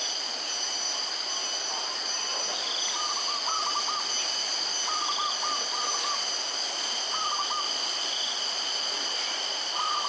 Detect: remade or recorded recorded